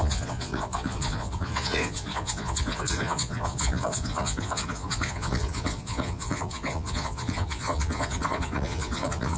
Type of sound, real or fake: fake